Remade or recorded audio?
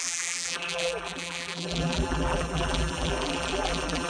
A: remade